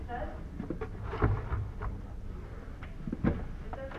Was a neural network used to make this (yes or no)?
no